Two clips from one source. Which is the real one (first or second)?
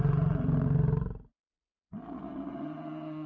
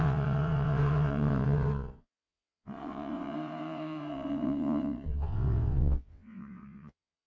first